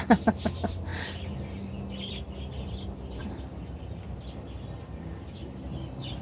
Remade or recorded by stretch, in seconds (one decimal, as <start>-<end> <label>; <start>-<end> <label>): 0.0-6.2 recorded